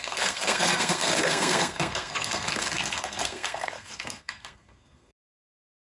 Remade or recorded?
remade